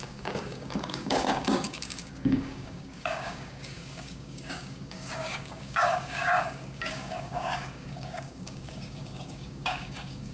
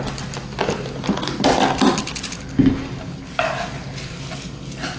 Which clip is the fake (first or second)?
first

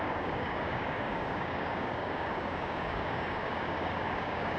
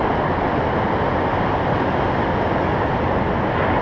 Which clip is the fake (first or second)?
first